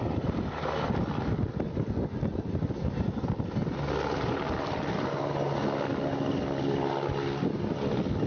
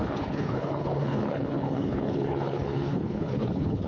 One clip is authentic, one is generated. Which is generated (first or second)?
second